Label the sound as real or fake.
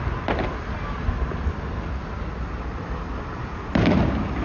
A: real